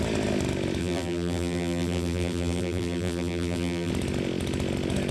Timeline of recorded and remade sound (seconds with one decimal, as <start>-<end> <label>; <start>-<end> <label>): 0.0-0.8 recorded; 0.8-3.9 remade; 3.9-5.1 recorded